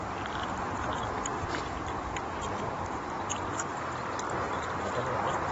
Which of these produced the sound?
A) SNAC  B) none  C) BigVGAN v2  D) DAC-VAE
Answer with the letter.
C